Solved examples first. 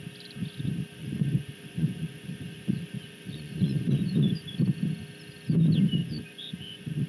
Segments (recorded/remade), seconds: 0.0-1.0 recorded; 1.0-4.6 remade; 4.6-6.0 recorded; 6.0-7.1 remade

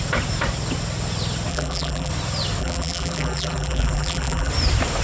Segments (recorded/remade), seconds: 0.0-1.5 recorded; 1.5-2.1 remade; 2.1-2.6 recorded; 2.6-4.5 remade; 4.5-5.0 recorded